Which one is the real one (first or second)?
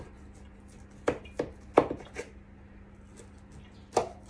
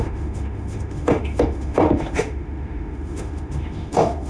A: first